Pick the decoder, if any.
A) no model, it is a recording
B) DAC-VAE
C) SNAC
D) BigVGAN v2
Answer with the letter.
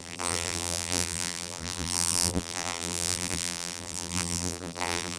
D